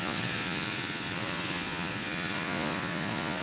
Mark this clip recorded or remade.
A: remade